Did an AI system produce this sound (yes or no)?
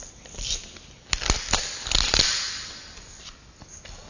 no